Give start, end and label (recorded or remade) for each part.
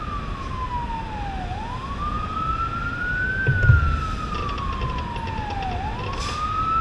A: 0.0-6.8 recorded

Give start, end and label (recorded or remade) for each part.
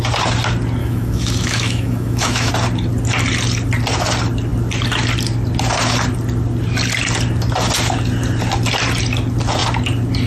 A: 0.0-0.8 recorded; 0.8-2.5 remade; 2.5-10.3 recorded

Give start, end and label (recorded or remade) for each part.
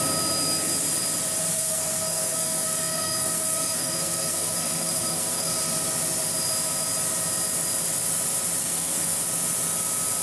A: 0.0-1.5 recorded; 1.5-5.5 remade; 5.5-8.6 recorded; 8.6-9.2 remade; 9.2-10.2 recorded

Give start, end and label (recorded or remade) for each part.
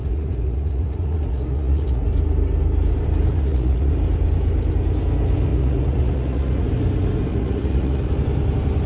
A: 0.0-2.0 remade; 2.0-3.3 recorded; 3.3-3.9 remade; 3.9-5.5 recorded; 5.5-6.7 remade; 6.7-7.3 recorded; 7.3-8.1 remade; 8.1-8.9 recorded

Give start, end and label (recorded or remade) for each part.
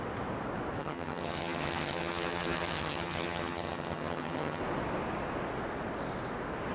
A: 0.0-0.8 recorded; 0.8-4.6 remade; 4.6-6.7 recorded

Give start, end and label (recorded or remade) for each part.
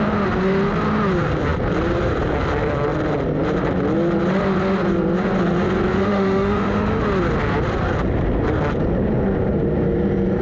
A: 0.0-5.9 recorded; 5.9-7.0 remade; 7.0-10.4 recorded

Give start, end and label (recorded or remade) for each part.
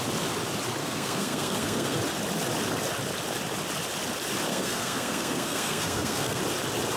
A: 0.0-0.8 recorded; 0.8-2.0 remade; 2.0-4.5 recorded; 4.5-6.4 remade; 6.4-7.0 recorded